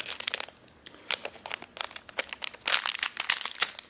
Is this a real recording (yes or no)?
yes